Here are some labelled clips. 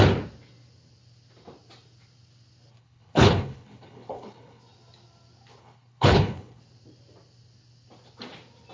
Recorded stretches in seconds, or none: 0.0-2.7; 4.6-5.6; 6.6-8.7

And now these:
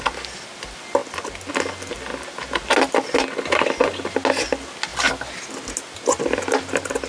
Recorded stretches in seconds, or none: 0.0-7.1

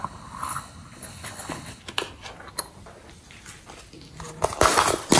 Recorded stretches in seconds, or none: 1.8-5.2

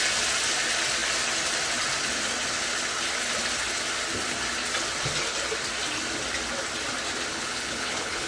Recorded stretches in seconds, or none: 0.0-7.3

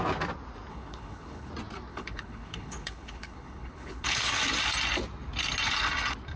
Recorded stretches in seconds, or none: 0.0-0.7; 1.5-1.9; 4.3-6.4

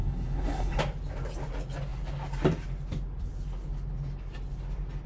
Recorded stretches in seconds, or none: 0.8-5.1